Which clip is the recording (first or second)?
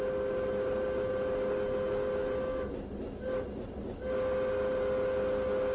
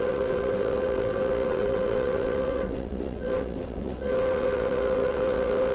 first